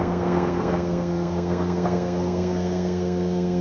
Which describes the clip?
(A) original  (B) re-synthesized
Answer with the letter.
B